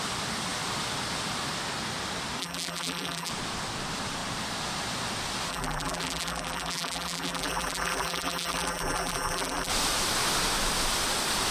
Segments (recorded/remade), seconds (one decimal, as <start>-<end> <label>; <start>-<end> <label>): 0.0-2.4 recorded; 2.4-3.3 remade; 3.3-5.5 recorded; 5.5-9.7 remade; 9.7-11.5 recorded